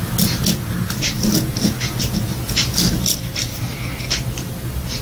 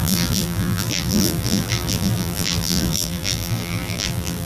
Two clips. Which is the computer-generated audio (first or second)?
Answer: second